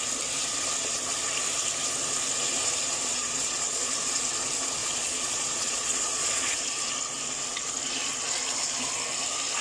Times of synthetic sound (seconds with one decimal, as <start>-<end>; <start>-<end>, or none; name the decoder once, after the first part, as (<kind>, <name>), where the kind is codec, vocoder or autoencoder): 3.1-3.8 (vocoder, Vocos); 4.8-6.6